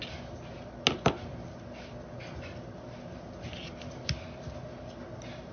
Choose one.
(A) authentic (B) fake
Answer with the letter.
A